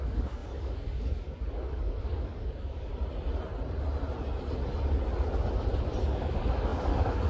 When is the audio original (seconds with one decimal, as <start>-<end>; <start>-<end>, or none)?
2.9-6.0